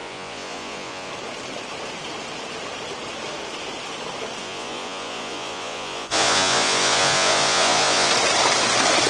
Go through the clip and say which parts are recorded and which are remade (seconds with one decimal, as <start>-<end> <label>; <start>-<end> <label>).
0.0-1.1 remade; 1.1-4.4 recorded; 4.4-8.1 remade; 8.1-9.1 recorded